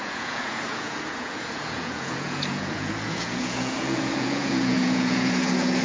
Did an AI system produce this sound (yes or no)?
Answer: yes